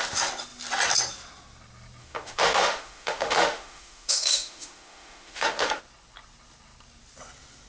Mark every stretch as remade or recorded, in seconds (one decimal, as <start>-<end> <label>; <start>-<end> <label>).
0.0-2.0 recorded; 2.0-5.8 remade; 5.8-7.7 recorded